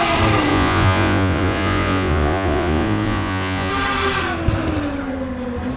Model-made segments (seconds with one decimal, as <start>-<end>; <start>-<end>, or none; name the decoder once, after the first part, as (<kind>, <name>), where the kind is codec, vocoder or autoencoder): 0.5-3.7 (vocoder, Vocos)